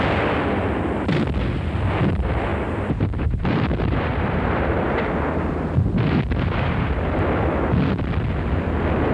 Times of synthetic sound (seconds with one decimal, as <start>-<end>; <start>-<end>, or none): 2.5-7.1